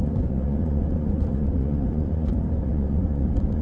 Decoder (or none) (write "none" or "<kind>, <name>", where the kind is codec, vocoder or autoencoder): vocoder, Vocos